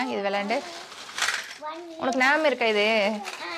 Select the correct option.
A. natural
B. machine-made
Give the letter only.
A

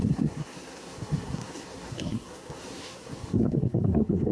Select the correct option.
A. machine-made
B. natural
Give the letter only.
A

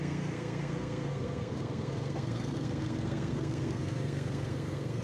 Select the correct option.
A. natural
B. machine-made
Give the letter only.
B